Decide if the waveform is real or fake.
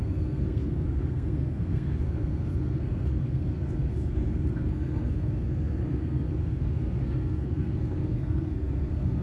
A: fake